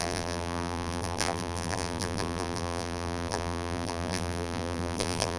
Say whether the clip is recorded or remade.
remade